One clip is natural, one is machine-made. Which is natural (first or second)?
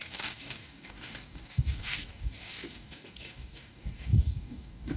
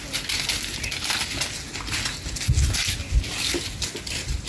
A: second